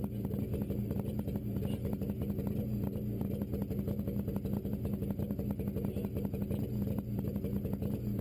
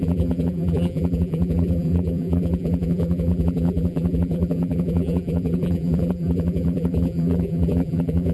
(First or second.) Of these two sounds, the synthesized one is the second